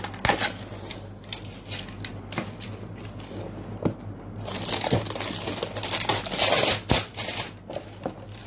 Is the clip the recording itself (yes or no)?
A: yes